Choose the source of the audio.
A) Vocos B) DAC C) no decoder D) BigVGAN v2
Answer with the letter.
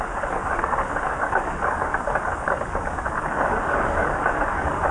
B